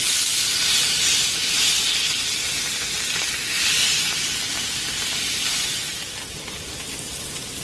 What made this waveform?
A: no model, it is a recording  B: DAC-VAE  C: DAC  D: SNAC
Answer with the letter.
A